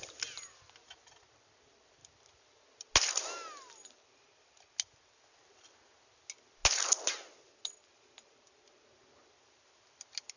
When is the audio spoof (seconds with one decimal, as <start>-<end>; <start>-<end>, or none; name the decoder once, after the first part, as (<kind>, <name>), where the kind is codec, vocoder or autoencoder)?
none